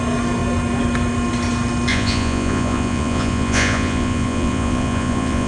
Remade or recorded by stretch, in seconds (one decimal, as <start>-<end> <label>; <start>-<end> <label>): 0.0-1.9 recorded; 1.9-5.5 remade